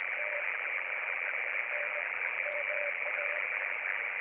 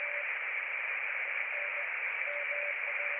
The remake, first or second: first